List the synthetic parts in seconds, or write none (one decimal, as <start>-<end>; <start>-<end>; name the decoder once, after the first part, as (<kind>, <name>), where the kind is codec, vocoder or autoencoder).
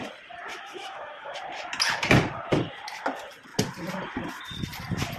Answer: 0.5-1.3 (autoencoder, DAC-VAE)